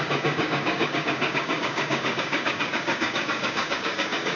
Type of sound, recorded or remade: remade